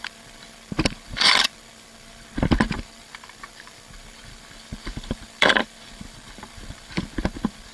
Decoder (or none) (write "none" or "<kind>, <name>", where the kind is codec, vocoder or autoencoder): vocoder, BigVGAN v2